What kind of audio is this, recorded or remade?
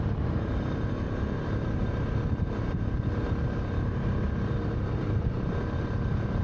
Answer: remade